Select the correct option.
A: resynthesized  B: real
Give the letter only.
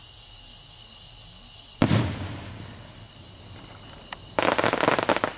B